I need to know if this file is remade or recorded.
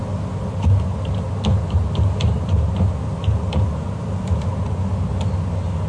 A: recorded